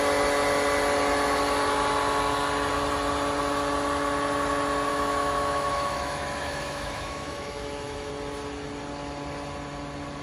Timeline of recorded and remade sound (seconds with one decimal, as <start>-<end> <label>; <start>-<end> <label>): 0.0-4.9 recorded; 4.9-8.1 remade; 8.1-10.2 recorded